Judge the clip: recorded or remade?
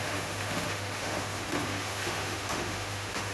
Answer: remade